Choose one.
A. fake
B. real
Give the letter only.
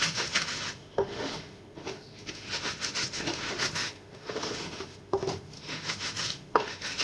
A